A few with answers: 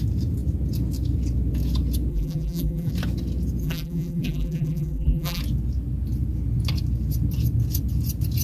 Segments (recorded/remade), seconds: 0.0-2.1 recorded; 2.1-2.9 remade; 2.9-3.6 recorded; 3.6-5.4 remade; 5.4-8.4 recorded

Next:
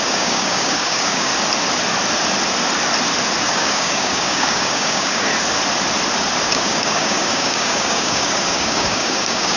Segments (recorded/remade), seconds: 0.0-1.3 remade; 1.3-3.4 recorded; 3.4-5.3 remade; 5.3-6.4 recorded; 6.4-9.6 remade

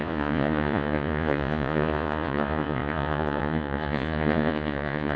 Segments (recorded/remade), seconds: 0.0-5.2 remade

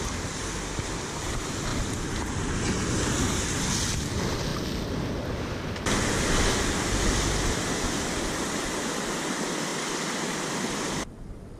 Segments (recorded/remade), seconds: 0.0-11.6 recorded